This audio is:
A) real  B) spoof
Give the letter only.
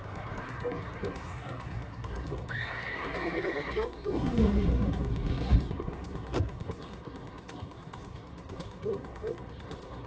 B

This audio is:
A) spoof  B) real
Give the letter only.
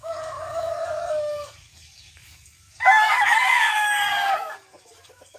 A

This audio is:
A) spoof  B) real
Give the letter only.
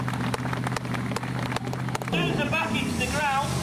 B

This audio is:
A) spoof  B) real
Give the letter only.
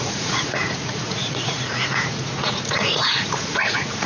A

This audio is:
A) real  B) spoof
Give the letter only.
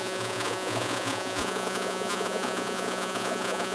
B